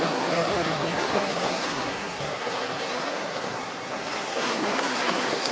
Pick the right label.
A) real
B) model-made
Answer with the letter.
B